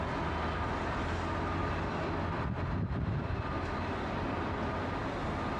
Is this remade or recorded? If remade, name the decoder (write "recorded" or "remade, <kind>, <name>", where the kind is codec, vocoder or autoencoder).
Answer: recorded